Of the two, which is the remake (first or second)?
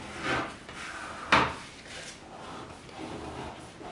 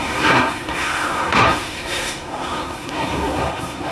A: second